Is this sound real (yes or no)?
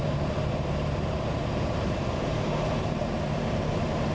no